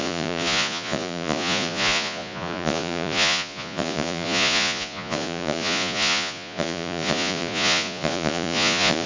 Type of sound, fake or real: fake